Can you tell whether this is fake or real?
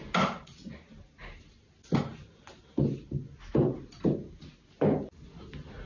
real